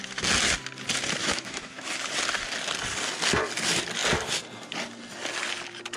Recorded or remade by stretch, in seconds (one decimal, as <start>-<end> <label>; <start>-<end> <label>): 0.0-1.2 recorded; 1.2-1.9 remade; 1.9-6.0 recorded